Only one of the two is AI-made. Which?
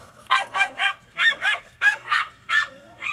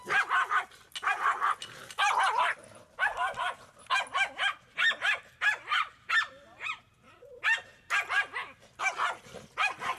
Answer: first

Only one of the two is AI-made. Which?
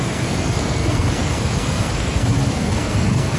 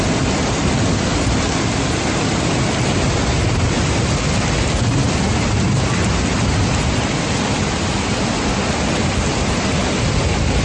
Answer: first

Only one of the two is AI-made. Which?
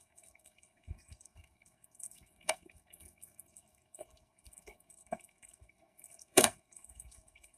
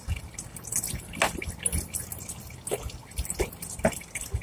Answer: first